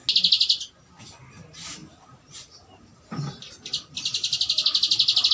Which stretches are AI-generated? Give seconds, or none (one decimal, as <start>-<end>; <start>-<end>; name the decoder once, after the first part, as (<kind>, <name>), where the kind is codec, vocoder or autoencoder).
none